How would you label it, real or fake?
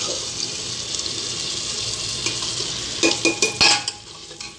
real